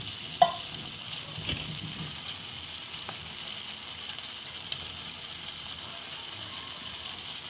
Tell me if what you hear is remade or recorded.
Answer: recorded